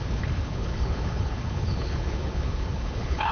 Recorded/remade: remade